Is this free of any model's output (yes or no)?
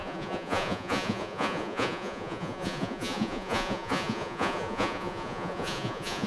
no